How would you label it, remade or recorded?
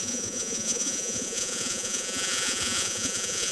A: remade